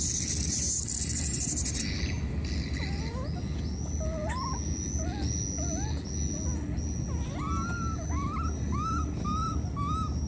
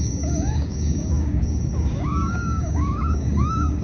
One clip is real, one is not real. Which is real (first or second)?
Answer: first